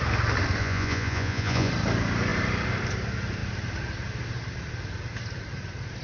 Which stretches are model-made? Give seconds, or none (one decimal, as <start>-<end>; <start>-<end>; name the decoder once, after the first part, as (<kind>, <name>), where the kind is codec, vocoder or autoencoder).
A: 0.6-1.7 (vocoder, Vocos)